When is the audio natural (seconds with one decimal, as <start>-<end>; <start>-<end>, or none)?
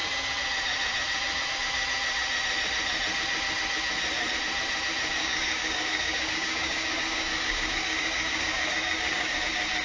0.0-5.2; 9.4-9.8